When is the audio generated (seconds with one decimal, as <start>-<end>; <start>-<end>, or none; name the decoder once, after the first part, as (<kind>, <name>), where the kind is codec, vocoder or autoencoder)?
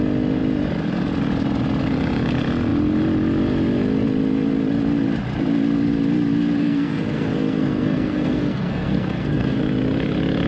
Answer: 6.6-9.6 (codec, SNAC)